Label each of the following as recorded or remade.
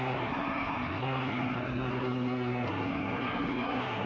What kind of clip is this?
remade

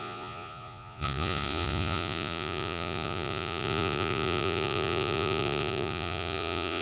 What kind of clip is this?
remade